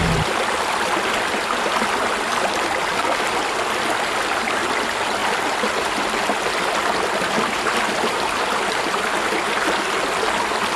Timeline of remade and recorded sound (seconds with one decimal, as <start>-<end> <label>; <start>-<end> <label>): 0.0-10.8 recorded